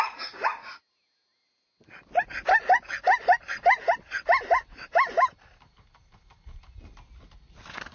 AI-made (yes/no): no